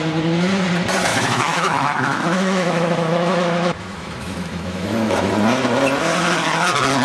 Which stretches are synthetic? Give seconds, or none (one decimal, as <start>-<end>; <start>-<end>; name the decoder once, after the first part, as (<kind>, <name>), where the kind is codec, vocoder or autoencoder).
1.1-5.3 (autoencoder, DAC-VAE)